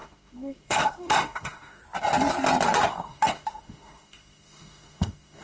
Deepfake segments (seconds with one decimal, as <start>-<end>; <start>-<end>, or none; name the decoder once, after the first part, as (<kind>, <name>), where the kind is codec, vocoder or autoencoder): 0.0-1.8 (autoencoder, DAC-VAE); 2.9-5.4